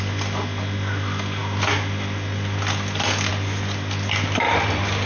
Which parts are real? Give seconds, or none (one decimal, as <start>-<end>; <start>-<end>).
0.0-5.1